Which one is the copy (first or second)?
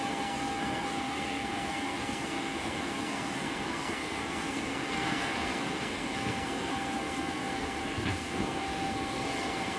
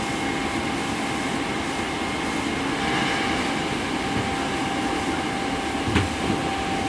first